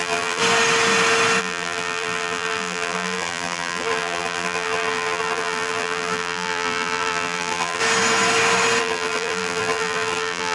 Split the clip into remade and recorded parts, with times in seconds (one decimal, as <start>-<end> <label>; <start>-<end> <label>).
0.0-0.4 remade; 0.4-1.4 recorded; 1.4-7.8 remade; 7.8-8.8 recorded; 8.8-10.5 remade